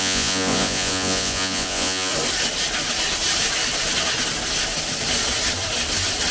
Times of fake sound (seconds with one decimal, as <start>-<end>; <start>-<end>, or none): 0.0-2.1